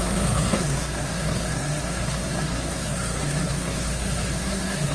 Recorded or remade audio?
remade